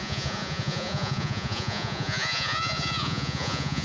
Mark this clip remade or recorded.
remade